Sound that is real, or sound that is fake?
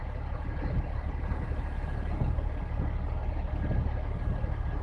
real